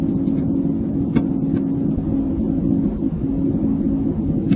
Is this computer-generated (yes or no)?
no